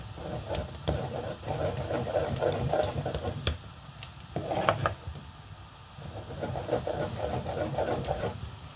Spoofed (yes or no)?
no